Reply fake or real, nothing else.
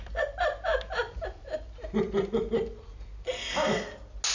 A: real